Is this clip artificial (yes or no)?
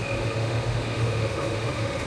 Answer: yes